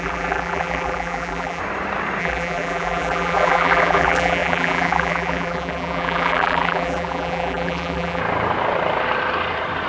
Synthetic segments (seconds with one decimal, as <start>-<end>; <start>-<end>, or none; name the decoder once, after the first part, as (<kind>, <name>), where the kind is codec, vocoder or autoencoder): 0.0-1.6 (vocoder, BigVGAN v2); 2.2-8.2